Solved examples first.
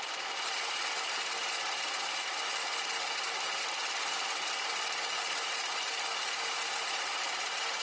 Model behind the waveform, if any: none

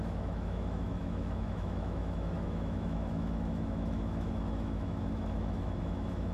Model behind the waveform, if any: autoencoder, DAC-VAE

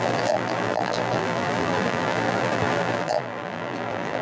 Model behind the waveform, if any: vocoder, BigVGAN v2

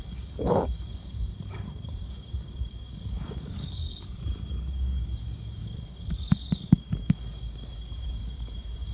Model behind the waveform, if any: codec, DAC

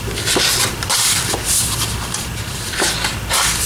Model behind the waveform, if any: none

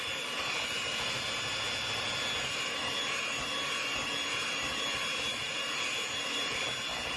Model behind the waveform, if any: none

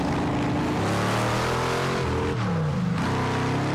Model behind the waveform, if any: none